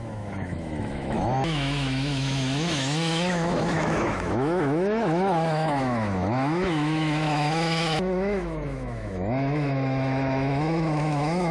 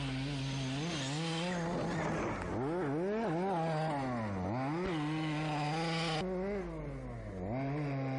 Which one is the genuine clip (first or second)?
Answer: second